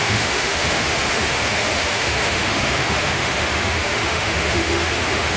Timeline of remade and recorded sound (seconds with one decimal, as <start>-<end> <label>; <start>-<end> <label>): 0.0-5.4 remade

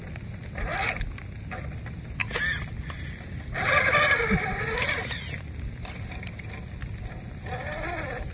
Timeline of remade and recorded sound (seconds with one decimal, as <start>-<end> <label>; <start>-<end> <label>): 0.0-8.3 recorded

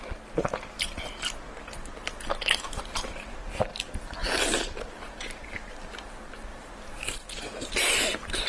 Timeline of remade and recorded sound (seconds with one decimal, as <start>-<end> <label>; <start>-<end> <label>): 0.0-2.4 recorded; 2.4-3.4 remade; 3.4-4.2 recorded; 4.2-5.9 remade; 5.9-6.5 recorded; 6.5-8.5 remade

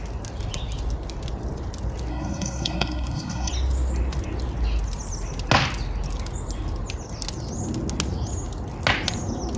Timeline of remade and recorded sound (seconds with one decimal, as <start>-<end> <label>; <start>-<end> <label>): 0.0-2.1 recorded; 2.1-3.5 remade; 3.5-9.6 recorded

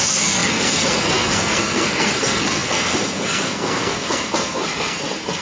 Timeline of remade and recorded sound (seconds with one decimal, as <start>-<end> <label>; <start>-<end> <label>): 0.0-5.4 remade